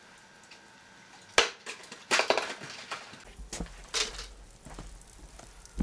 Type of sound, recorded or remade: recorded